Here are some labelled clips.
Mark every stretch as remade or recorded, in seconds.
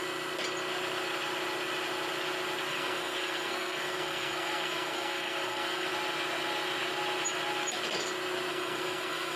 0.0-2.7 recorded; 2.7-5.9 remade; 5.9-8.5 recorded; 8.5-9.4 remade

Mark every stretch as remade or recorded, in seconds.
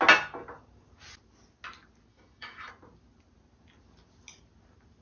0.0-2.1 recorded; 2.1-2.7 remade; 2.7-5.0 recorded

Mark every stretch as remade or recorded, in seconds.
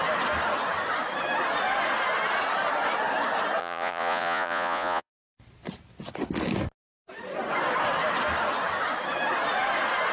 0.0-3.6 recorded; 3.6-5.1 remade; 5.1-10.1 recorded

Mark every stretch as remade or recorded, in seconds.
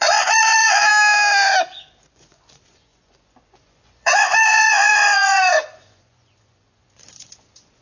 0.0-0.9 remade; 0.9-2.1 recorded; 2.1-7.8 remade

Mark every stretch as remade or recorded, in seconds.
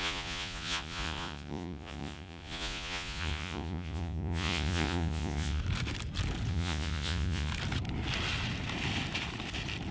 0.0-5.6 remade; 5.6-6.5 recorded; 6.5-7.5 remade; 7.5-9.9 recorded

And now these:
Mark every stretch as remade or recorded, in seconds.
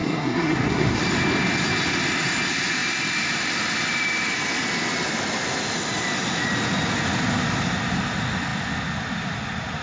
0.0-1.0 remade; 1.0-9.8 recorded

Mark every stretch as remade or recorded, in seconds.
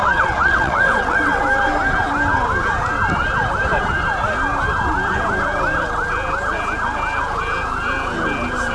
0.0-1.4 remade; 1.4-8.7 recorded